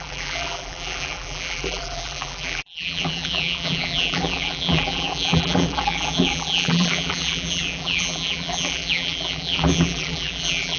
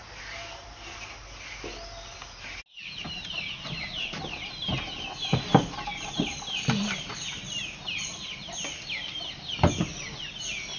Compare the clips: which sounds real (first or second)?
second